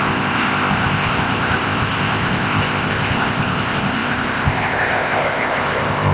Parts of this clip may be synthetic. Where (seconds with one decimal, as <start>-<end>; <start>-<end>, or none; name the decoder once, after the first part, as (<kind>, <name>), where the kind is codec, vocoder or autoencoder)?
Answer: 0.0-6.1 (codec, ZipCodec)